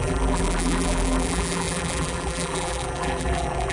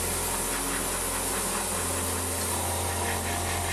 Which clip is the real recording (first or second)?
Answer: second